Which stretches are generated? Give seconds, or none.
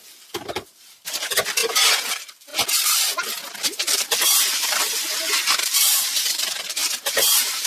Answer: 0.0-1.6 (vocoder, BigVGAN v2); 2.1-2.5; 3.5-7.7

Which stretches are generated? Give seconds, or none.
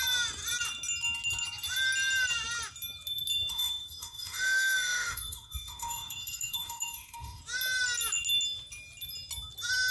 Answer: 3.5-7.4 (autoencoder, DAC-VAE)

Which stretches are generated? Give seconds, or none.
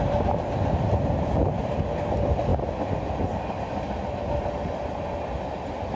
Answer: 0.0-2.5 (vocoder, BigVGAN v2)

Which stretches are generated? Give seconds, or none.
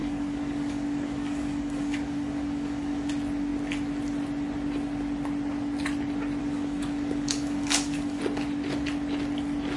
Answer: 0.0-3.1 (codec, DAC); 6.4-8.2